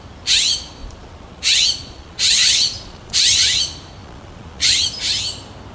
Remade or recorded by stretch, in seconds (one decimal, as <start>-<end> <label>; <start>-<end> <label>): 0.0-0.8 recorded; 0.8-3.6 remade; 3.6-4.0 recorded; 4.0-4.8 remade; 4.8-5.7 recorded